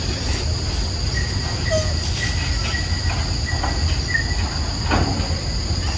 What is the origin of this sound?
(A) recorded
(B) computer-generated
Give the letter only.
A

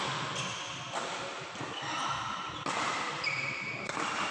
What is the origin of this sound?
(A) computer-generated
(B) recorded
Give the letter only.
B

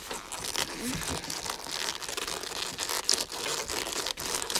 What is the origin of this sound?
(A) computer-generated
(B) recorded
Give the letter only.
B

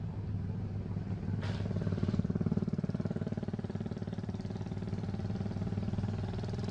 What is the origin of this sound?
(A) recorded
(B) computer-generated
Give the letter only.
A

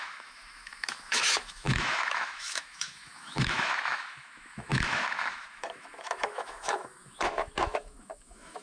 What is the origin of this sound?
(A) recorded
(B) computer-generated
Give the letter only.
B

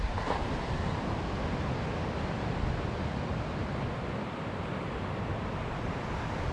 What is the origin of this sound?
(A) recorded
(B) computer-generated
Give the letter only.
A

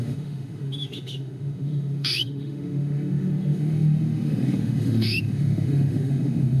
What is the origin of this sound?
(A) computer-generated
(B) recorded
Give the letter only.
A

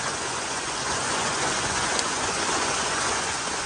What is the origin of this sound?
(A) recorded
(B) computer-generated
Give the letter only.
B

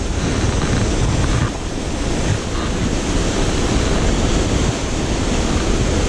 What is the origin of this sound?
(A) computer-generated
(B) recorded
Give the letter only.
B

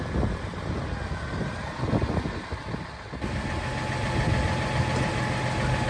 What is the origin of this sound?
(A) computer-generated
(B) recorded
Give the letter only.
B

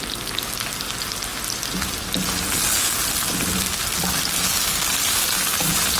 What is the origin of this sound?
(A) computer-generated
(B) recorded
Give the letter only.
B